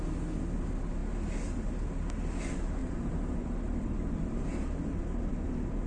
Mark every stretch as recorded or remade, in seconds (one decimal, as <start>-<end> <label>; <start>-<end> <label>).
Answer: 0.0-2.8 recorded; 2.8-5.5 remade; 5.5-5.9 recorded